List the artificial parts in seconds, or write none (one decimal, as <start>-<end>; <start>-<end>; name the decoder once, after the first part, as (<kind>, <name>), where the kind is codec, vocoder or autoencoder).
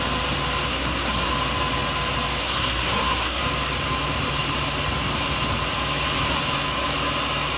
0.7-1.3 (codec, SNAC); 2.4-3.4